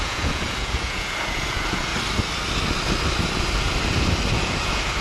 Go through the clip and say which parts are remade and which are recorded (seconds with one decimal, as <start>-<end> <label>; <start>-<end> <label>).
0.0-1.9 remade; 1.9-4.3 recorded; 4.3-5.0 remade